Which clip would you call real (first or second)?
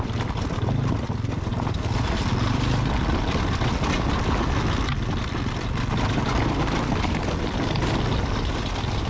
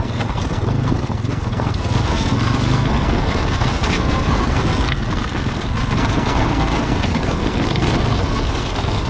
first